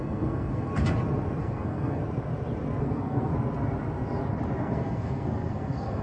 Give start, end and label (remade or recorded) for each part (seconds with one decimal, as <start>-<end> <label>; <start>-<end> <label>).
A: 0.0-0.7 remade; 0.7-1.4 recorded; 1.4-2.0 remade; 2.0-2.8 recorded; 2.8-3.3 remade; 3.3-4.6 recorded; 4.6-6.0 remade